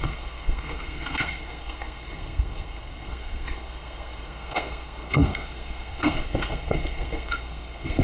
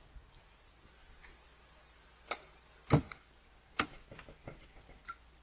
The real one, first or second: second